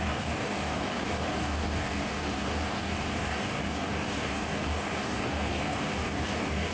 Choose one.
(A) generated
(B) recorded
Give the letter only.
A